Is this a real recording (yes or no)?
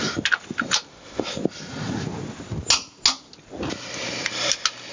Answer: yes